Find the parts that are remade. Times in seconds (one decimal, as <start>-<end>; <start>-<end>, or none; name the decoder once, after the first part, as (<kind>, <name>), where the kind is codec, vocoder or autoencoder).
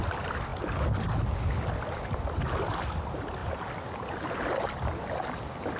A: none